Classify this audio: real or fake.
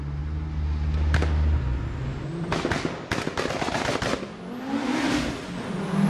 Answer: real